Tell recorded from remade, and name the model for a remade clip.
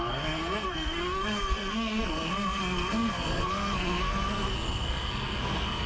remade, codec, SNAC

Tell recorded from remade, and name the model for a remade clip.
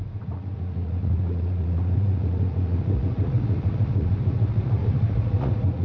remade, vocoder, Vocos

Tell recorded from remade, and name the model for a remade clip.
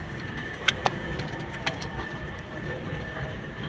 remade, codec, DAC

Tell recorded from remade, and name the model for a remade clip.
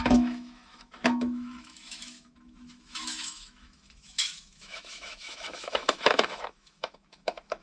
remade, autoencoder, DAC-VAE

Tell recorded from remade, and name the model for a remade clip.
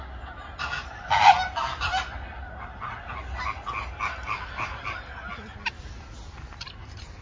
recorded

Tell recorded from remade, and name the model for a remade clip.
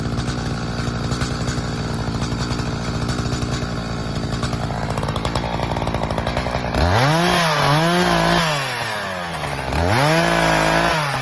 recorded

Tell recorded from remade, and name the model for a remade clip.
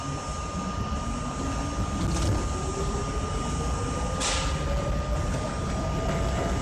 recorded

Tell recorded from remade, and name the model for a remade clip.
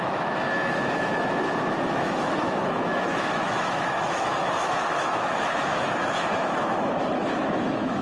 remade, autoencoder, DAC-VAE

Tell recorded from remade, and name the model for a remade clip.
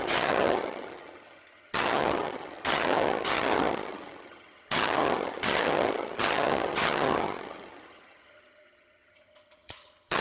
remade, vocoder, HiFi-GAN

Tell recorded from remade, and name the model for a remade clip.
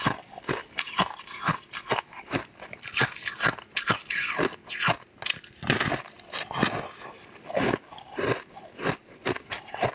recorded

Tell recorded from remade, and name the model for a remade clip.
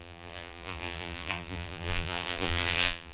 remade, vocoder, BigVGAN v2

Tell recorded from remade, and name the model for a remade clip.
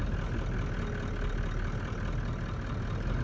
recorded